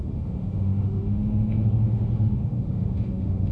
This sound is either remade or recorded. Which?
remade